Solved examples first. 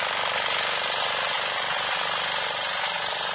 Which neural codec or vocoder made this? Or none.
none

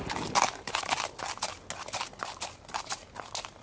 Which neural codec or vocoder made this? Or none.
none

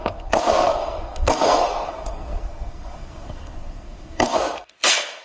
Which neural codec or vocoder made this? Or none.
codec, SNAC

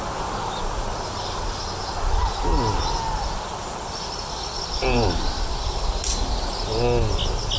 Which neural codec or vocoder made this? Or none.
none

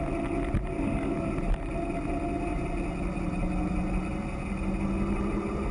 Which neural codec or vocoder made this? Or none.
none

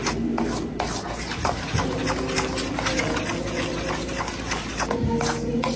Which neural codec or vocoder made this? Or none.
none